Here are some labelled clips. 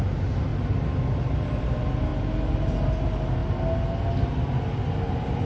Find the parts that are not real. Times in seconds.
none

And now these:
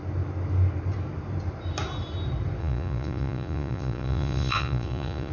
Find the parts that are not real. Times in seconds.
2.6-5.3 (vocoder, Vocos)